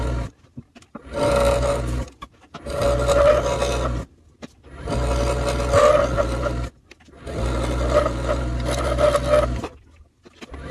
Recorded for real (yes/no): yes